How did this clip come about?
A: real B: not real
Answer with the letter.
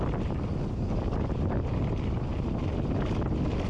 A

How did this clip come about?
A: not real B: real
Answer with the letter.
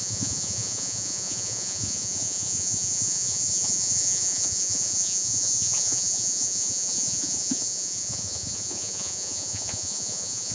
A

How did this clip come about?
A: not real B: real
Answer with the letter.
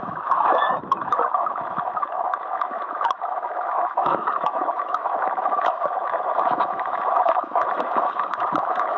A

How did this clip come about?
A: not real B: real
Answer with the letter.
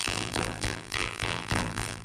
A